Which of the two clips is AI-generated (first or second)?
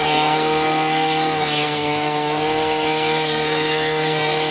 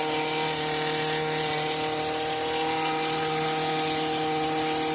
first